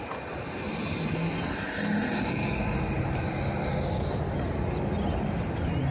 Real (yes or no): yes